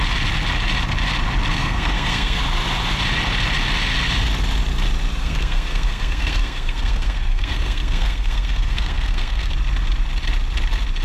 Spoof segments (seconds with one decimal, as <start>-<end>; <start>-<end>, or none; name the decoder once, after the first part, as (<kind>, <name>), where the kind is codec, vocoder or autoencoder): 1.5-2.4 (codec, SNAC); 5.2-9.5